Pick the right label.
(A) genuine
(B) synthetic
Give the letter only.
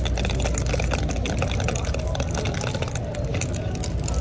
A